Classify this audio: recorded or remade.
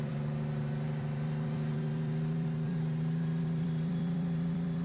remade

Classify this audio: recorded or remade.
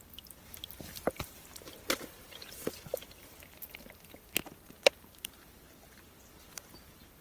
remade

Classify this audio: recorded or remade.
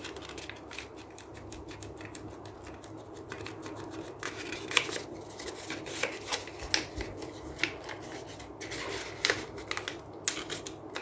recorded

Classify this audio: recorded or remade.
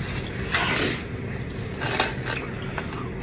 recorded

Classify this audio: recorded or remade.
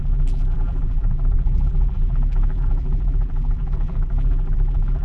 remade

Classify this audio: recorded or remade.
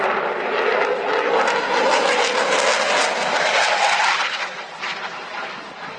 recorded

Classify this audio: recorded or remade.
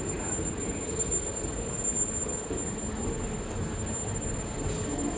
recorded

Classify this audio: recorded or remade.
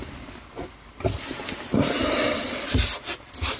recorded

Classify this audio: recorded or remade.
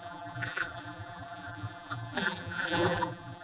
remade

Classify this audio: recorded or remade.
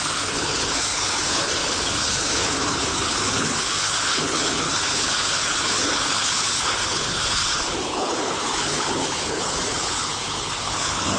remade